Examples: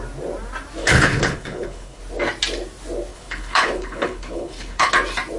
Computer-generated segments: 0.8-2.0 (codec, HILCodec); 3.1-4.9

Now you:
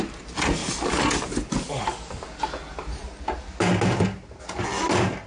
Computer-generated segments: 0.6-1.8 (vocoder, BigVGAN v2)